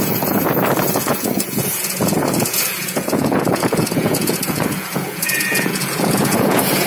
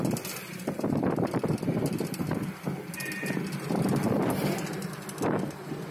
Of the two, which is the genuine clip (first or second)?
second